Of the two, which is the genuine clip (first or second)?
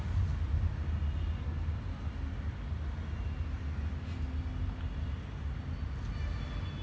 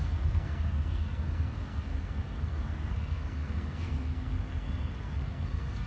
first